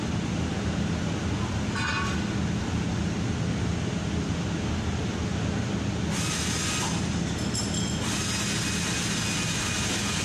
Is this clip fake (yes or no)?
no